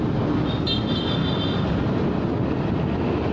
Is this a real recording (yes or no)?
yes